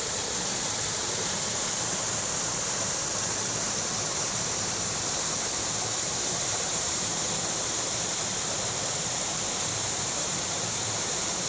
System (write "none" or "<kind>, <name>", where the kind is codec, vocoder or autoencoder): vocoder, BigVGAN v2